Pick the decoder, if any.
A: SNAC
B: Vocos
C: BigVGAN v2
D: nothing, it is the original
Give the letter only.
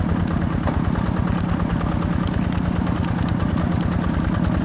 D